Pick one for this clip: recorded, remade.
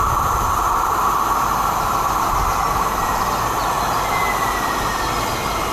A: recorded